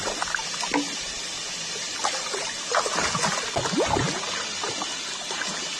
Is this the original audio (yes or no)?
yes